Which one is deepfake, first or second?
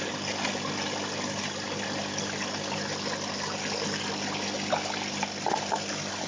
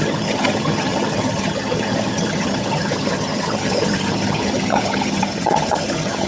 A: second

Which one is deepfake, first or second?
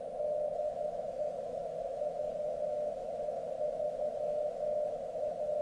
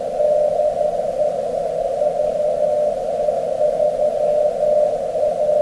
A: first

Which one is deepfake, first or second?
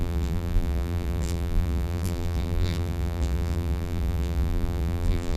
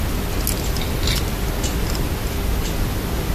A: first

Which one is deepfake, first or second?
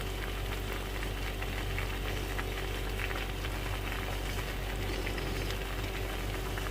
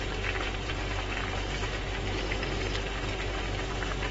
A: second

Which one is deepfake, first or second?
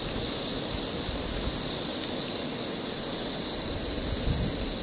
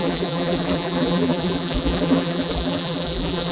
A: second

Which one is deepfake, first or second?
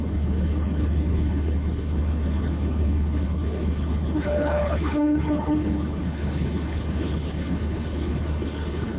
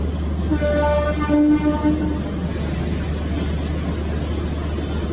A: first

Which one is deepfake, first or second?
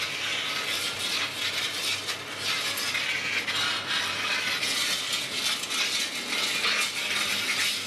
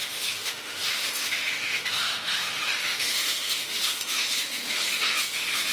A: second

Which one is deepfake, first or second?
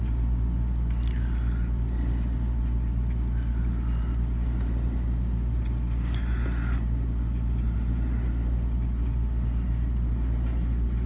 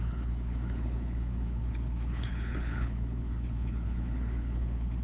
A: second